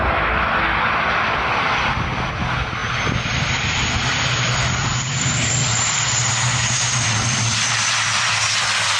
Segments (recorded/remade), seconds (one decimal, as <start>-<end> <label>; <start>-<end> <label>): 0.0-4.9 recorded; 4.9-7.7 remade; 7.7-9.0 recorded